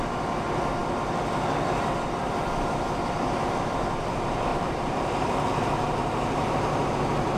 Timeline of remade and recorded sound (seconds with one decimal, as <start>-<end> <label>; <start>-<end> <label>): 0.0-4.5 recorded; 4.5-6.9 remade; 6.9-7.4 recorded